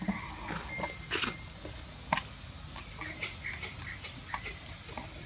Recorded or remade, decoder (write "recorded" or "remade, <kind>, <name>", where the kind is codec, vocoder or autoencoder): recorded